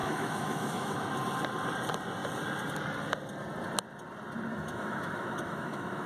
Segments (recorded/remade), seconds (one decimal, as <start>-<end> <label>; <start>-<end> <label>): 0.0-1.1 remade; 1.1-4.5 recorded; 4.5-6.1 remade